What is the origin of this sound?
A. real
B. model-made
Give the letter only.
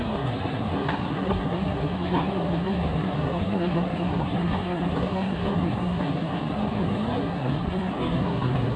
B